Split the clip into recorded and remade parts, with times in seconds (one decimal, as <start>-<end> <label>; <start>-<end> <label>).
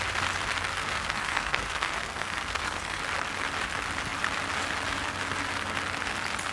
0.0-0.7 recorded; 0.7-3.0 remade; 3.0-6.5 recorded